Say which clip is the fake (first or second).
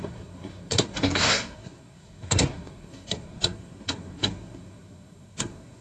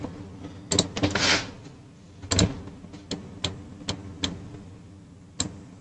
first